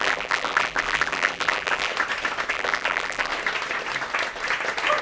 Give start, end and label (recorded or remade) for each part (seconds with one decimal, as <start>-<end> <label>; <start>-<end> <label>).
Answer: 0.0-1.9 remade; 1.9-2.5 recorded; 2.5-3.3 remade; 3.3-5.0 recorded